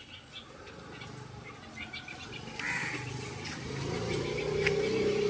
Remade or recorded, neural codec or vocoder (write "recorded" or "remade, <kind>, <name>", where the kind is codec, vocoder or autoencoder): recorded